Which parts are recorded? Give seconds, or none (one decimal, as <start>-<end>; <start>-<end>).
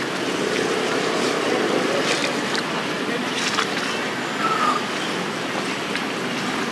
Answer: 0.0-2.2; 3.0-6.7